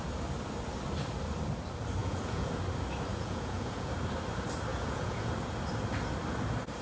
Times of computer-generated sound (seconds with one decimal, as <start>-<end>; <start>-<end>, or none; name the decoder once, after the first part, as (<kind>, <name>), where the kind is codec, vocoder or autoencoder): 2.0-2.5 (vocoder, Vocos); 3.1-3.9; 4.7-5.3